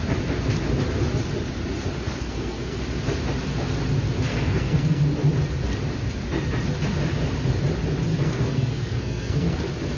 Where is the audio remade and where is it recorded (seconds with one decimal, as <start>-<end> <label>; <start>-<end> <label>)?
0.0-2.2 recorded; 2.2-2.8 remade; 2.8-4.3 recorded; 4.3-5.0 remade; 5.0-8.1 recorded; 8.1-9.6 remade; 9.6-10.0 recorded